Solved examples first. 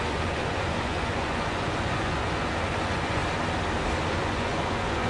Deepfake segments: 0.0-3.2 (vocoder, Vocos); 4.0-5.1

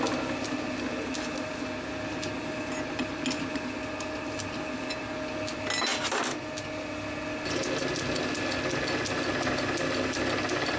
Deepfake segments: none

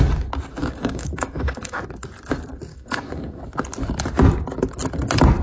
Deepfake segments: 0.6-1.8 (codec, DAC); 2.7-3.4

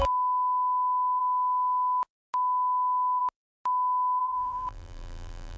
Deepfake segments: 4.2-5.6 (vocoder, BigVGAN v2)

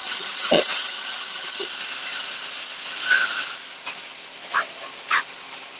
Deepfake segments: 0.0-1.7 (vocoder, HiFi-GAN)

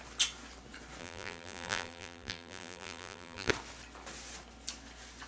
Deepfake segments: 1.0-3.5 (vocoder, BigVGAN v2)

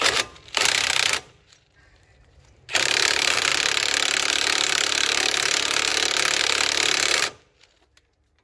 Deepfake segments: 0.0-3.5 (vocoder, BigVGAN v2); 4.3-5.9; 6.4-8.4